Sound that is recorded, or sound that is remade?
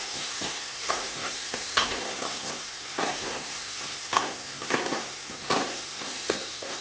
remade